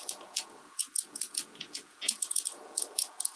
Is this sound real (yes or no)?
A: no